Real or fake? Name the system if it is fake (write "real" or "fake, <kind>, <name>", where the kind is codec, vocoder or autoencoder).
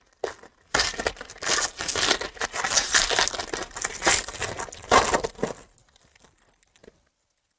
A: real